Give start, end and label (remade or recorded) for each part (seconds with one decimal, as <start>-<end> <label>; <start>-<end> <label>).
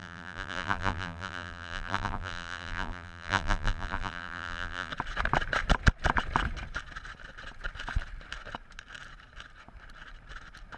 0.0-4.9 remade; 4.9-10.8 recorded